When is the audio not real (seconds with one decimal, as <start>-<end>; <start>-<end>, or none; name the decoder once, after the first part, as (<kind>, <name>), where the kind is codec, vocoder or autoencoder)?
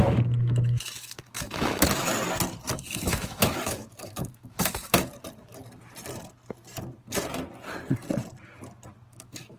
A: 0.0-2.1 (autoencoder, DAC-VAE); 2.7-5.1; 9.1-9.6